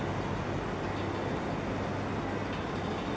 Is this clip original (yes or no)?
yes